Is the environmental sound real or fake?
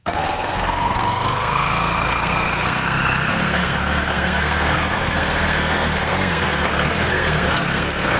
fake